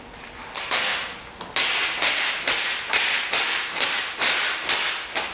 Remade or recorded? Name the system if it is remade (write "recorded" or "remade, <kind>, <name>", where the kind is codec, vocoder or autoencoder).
recorded